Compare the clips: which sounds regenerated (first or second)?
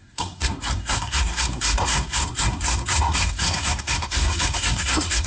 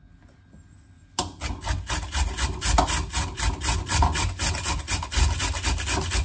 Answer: first